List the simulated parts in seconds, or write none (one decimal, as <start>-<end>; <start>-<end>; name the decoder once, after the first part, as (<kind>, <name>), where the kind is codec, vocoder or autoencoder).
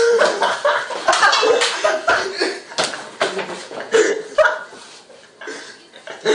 3.6-4.1 (vocoder, Vocos)